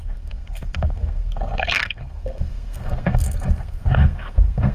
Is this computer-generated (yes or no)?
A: yes